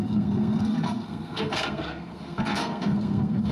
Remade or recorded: remade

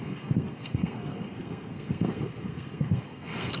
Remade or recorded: remade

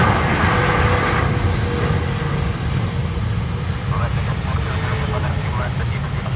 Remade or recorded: recorded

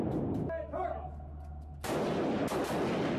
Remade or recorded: recorded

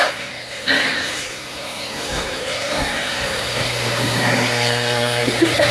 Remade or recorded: remade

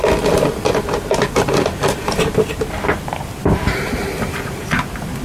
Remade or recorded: recorded